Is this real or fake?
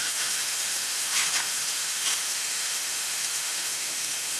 fake